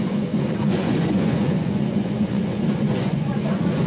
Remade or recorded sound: remade